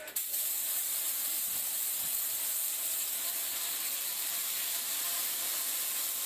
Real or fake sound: fake